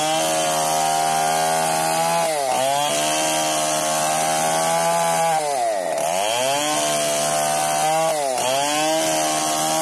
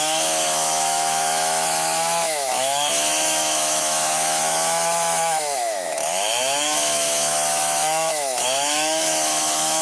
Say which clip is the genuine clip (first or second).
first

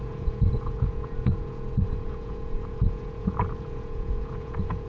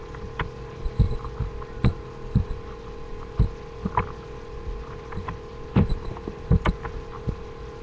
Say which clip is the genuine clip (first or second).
second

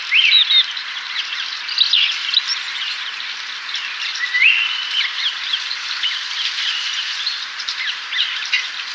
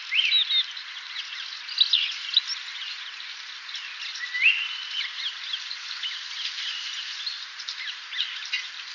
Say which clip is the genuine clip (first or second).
second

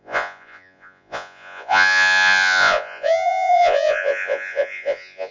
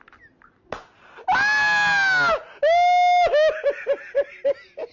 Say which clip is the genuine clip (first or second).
second